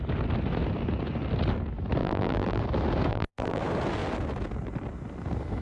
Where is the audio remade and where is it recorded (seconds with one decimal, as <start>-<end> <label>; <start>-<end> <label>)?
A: 0.0-2.0 recorded; 2.0-2.6 remade; 2.6-3.1 recorded; 3.1-3.6 remade; 3.6-5.6 recorded

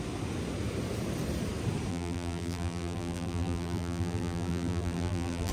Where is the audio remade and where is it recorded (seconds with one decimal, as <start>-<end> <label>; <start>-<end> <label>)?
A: 0.0-1.9 recorded; 1.9-5.5 remade

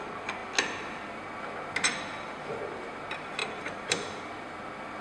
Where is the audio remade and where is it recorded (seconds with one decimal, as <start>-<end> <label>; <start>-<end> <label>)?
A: 0.0-3.4 recorded; 3.4-4.2 remade; 4.2-5.0 recorded

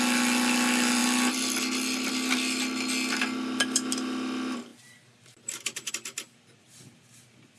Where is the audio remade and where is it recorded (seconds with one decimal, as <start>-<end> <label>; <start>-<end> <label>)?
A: 0.0-7.6 recorded

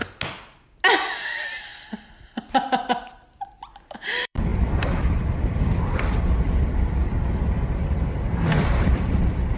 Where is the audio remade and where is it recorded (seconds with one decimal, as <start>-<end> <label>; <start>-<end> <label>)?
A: 0.0-1.2 recorded; 1.2-1.7 remade; 1.7-4.0 recorded; 4.0-4.5 remade; 4.5-5.5 recorded; 5.5-7.0 remade; 7.0-7.8 recorded; 7.8-9.6 remade

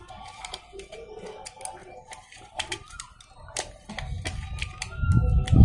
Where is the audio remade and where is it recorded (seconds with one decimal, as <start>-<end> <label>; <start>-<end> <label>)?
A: 0.0-1.8 recorded; 1.8-3.9 remade; 3.9-5.6 recorded

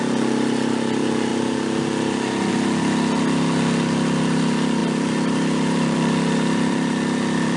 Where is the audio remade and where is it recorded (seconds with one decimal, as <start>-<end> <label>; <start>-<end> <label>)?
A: 0.0-4.8 recorded; 4.8-7.6 remade

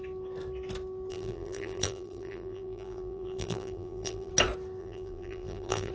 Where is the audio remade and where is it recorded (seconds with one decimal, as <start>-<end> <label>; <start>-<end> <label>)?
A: 0.0-1.1 recorded; 1.1-4.3 remade; 4.3-4.8 recorded; 4.8-5.9 remade